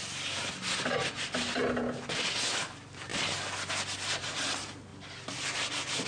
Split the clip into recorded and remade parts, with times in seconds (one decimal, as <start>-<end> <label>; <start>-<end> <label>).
0.0-6.1 recorded